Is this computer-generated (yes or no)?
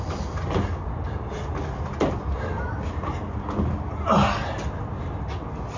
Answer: no